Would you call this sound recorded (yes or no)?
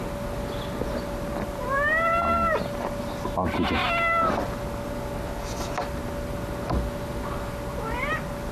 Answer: yes